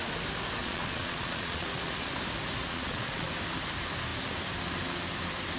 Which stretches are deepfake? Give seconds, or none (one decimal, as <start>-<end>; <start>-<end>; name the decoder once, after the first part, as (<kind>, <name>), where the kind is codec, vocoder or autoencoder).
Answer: 0.6-2.1 (vocoder, Vocos); 2.6-3.3